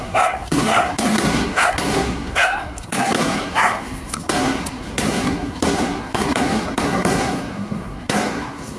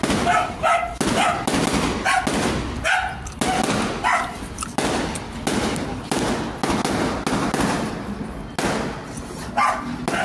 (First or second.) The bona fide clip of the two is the second